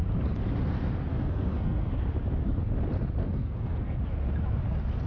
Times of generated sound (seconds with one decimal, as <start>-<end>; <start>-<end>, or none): 1.1-1.9; 3.2-4.0